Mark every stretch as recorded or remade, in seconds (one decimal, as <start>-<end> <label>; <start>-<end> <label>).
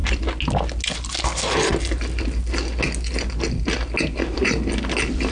0.0-5.3 recorded